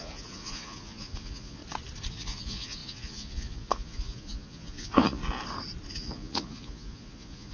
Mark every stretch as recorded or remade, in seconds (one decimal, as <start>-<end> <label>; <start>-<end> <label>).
0.0-1.6 remade; 1.6-2.1 recorded; 2.1-5.2 remade; 5.2-5.9 recorded; 5.9-7.5 remade